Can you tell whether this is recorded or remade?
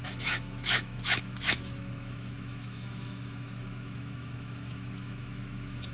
remade